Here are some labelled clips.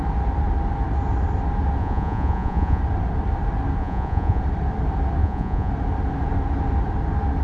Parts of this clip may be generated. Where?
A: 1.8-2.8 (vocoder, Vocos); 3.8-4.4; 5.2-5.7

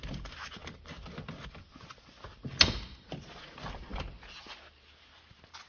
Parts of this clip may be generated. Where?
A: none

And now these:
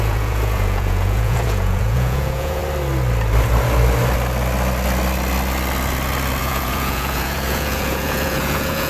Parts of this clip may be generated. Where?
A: 0.0-2.6 (vocoder, Vocos); 6.4-8.9